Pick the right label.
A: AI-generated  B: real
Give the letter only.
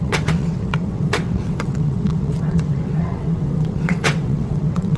A